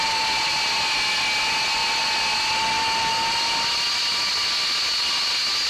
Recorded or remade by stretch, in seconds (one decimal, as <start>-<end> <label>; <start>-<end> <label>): 0.0-5.7 recorded

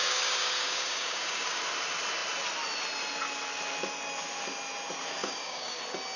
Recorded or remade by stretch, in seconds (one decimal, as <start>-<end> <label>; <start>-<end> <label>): 0.0-1.6 remade; 1.6-5.2 recorded; 5.2-5.8 remade; 5.8-6.2 recorded

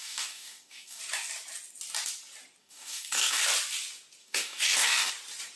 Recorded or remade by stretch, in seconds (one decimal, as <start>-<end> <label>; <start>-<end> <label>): 0.0-1.0 remade; 1.0-2.6 recorded; 2.6-3.4 remade; 3.4-4.2 recorded; 4.2-5.1 remade; 5.1-5.6 recorded

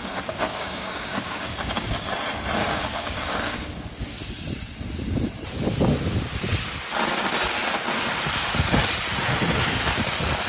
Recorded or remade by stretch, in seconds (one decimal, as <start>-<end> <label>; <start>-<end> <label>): 0.0-2.1 remade; 2.1-2.6 recorded; 2.6-4.2 remade; 4.2-10.5 recorded